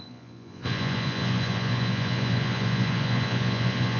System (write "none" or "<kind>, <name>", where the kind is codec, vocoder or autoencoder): vocoder, Vocos